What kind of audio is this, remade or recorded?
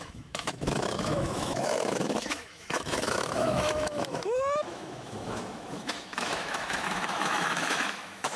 remade